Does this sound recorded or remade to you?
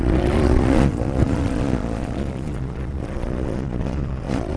remade